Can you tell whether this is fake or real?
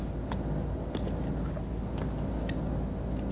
real